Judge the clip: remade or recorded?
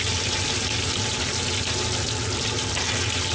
recorded